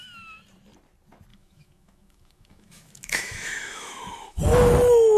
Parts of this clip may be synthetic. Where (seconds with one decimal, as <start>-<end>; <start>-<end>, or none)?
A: 1.3-4.4